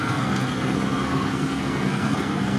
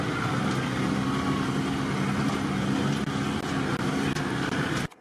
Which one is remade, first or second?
first